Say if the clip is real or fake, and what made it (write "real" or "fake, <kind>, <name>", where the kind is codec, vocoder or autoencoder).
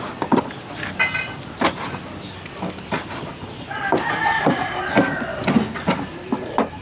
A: real